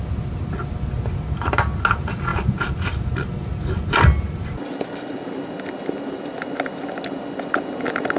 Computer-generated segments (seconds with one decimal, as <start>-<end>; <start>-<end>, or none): none